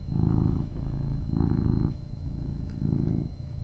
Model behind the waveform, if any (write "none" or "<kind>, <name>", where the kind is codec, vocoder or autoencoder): autoencoder, DAC-VAE